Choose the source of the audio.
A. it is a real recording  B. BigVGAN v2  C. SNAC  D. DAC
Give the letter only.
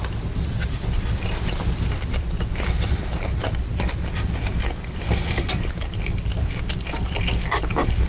B